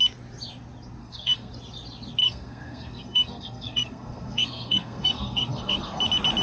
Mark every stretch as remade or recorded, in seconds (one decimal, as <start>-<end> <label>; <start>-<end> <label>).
0.0-1.0 recorded; 1.0-1.5 remade; 1.5-2.2 recorded; 2.2-6.0 remade; 6.0-6.4 recorded